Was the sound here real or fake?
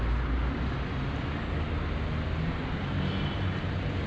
real